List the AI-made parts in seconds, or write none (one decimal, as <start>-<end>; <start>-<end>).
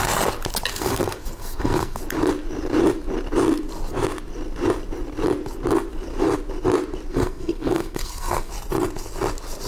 0.7-2.0; 7.1-8.5